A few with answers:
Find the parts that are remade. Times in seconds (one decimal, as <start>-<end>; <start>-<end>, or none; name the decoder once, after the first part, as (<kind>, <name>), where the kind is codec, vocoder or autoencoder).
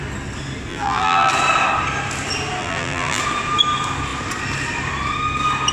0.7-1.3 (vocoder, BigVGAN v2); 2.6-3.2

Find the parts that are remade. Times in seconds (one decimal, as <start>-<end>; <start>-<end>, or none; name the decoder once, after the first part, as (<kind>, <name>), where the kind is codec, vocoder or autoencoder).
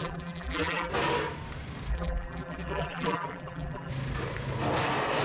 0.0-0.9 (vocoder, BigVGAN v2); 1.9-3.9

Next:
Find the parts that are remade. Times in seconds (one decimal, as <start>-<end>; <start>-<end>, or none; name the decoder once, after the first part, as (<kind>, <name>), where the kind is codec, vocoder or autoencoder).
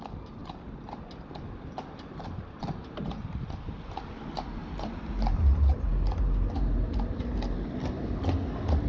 0.4-1.0 (vocoder, BigVGAN v2); 1.7-4.1; 4.6-5.9